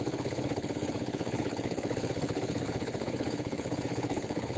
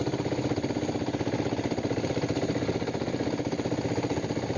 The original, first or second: second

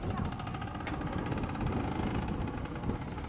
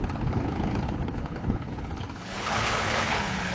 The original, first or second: first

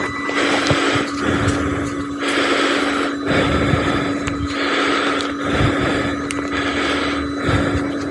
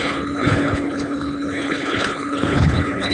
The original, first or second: first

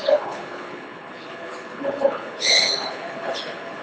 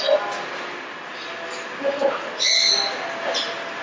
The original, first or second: second